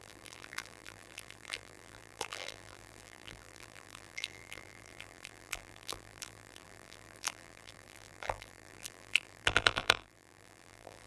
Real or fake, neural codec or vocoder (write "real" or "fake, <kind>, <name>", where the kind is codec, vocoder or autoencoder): fake, vocoder, BigVGAN v2